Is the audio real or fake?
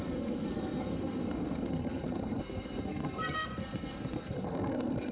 fake